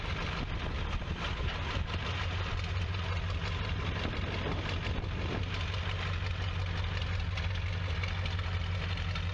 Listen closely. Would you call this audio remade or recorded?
recorded